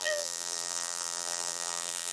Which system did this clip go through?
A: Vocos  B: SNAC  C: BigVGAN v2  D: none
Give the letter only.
C